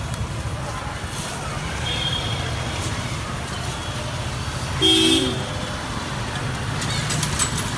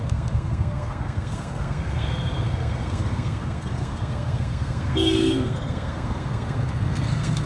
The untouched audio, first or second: first